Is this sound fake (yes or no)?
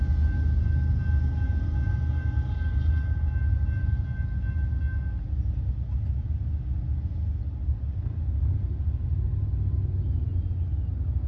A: no